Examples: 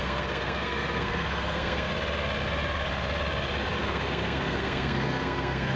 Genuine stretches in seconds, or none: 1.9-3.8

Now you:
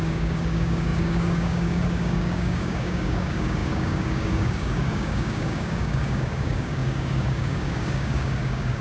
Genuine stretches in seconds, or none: none

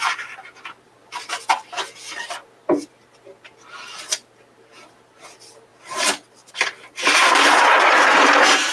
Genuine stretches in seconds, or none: 0.0-5.7; 7.6-8.7

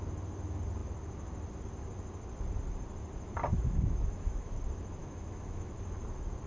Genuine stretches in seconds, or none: 0.0-3.5; 4.5-5.0; 5.7-6.5

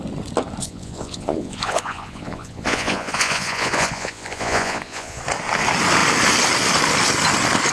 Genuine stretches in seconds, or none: 0.0-0.6; 5.2-7.7

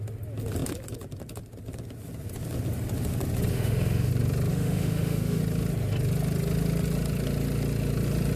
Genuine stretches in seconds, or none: 0.0-3.5; 4.1-4.5; 5.4-8.4

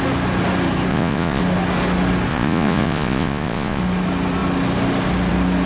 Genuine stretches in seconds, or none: 0.0-0.9; 1.4-2.3; 3.8-5.7